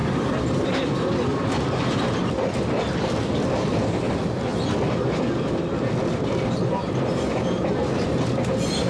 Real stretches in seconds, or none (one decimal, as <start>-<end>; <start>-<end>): 0.7-6.7; 8.1-8.9